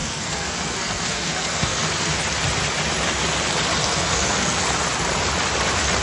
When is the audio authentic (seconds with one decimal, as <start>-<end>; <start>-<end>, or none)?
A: 2.2-3.8; 4.6-6.0